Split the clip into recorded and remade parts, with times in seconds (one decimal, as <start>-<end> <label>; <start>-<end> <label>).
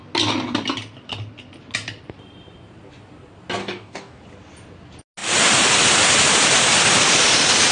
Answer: 0.0-3.6 recorded; 3.6-4.2 remade; 4.2-7.7 recorded